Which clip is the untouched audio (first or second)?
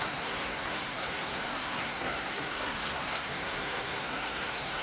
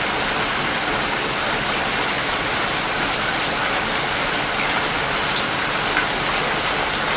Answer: second